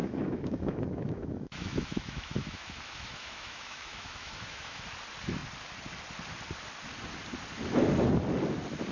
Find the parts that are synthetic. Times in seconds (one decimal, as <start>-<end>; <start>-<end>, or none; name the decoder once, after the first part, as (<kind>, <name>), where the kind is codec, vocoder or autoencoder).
0.0-4.8 (autoencoder, DAC-VAE)